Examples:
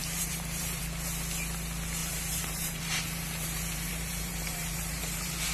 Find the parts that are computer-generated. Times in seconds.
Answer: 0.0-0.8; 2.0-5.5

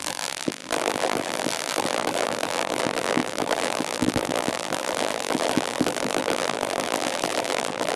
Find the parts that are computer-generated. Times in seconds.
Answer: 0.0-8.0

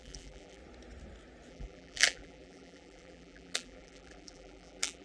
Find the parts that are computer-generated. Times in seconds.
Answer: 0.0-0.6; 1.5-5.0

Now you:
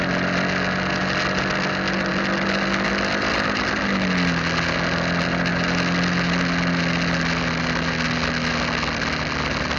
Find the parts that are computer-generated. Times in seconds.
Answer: none

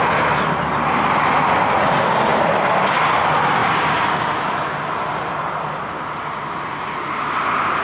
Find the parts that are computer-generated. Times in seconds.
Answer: 2.3-3.1

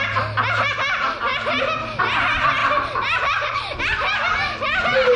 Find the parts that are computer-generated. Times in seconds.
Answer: 2.6-5.2

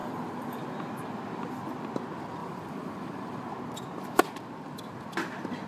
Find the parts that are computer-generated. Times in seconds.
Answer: 0.0-0.6; 2.4-3.5